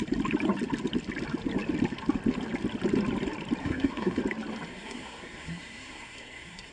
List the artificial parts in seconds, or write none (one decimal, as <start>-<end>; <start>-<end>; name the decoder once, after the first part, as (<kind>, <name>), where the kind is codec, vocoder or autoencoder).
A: 3.6-4.2 (codec, SNAC); 4.7-6.7